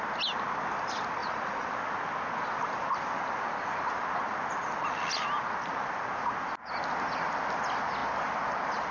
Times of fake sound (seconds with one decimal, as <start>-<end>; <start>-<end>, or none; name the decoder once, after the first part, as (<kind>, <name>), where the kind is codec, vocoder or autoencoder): 1.2-1.7 (vocoder, Vocos)

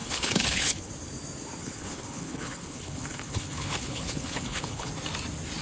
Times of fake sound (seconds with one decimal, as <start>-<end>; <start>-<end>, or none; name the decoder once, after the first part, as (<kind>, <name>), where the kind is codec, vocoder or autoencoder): 0.0-0.9 (codec, HILCodec); 1.6-4.9